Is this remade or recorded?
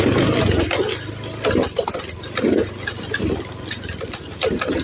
recorded